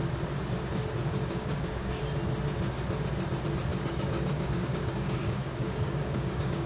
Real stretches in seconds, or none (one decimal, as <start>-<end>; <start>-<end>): 0.0-1.0; 2.0-3.7